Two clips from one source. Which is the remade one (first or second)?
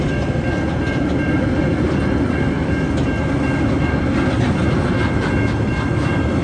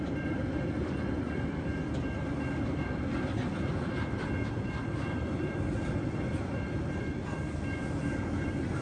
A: second